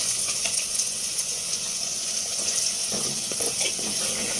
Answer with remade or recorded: remade